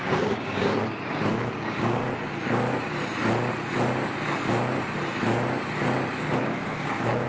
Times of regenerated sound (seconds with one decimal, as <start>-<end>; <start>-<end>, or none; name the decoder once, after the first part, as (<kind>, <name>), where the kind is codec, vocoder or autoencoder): 0.0-0.8 (codec, DAC); 1.3-2.0; 6.4-7.3

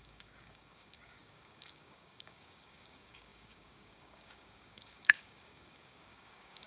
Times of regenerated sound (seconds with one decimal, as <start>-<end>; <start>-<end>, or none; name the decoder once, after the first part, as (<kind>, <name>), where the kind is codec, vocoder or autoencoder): 0.0-6.7 (codec, DAC)

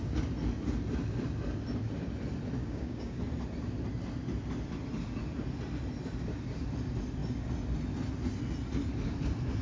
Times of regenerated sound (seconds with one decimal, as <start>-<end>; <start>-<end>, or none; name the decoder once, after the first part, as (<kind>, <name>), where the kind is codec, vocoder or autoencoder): 2.6-3.2 (codec, DAC)